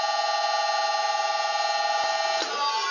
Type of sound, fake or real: real